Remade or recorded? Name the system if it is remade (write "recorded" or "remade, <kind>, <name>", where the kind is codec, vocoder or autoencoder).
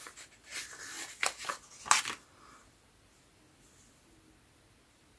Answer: recorded